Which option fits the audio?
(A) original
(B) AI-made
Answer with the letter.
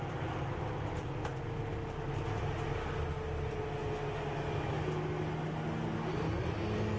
A